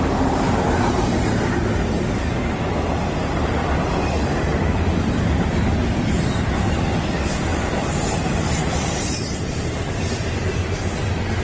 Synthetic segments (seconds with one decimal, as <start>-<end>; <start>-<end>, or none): 2.0-4.6; 7.5-10.4